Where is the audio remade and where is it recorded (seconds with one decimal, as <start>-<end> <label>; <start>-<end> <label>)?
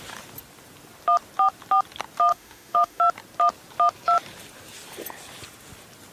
0.0-2.3 recorded; 2.3-3.0 remade; 3.0-6.1 recorded